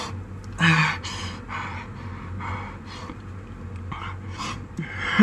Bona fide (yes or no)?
yes